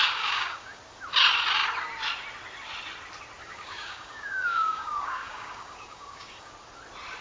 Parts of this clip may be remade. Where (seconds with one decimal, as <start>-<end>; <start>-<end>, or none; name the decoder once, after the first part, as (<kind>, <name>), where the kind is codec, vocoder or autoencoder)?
0.0-0.8 (codec, DAC); 3.4-6.5